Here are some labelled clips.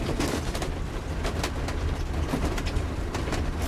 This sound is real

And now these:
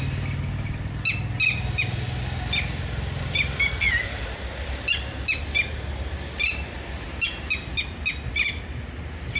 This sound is real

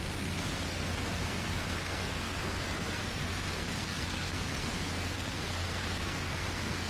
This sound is fake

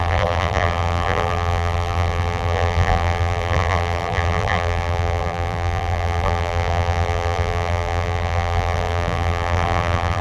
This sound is fake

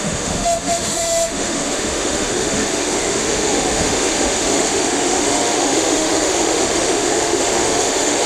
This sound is fake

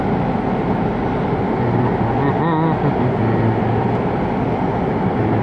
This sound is real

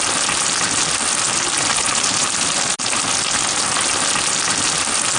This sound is real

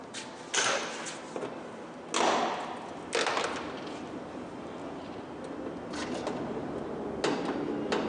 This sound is real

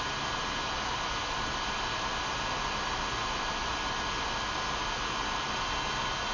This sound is real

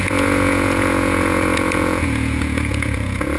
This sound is fake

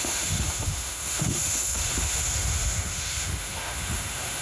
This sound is fake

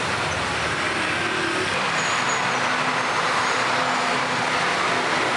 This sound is real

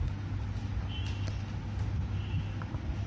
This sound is real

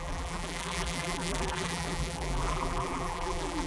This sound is fake